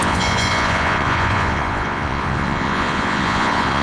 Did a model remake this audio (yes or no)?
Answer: yes